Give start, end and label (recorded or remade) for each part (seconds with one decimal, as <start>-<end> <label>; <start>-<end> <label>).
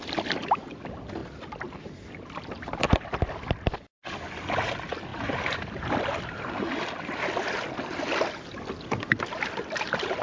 0.0-5.1 recorded; 5.1-6.7 remade; 6.7-10.2 recorded